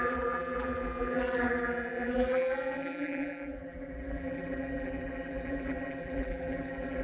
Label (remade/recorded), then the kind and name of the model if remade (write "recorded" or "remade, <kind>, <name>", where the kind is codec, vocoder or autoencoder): remade, vocoder, BigVGAN v2